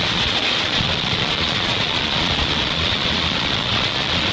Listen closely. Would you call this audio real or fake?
fake